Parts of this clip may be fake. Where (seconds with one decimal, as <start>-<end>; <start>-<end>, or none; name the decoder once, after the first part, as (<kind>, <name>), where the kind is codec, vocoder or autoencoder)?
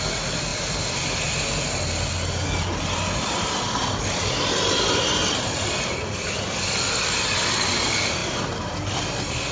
none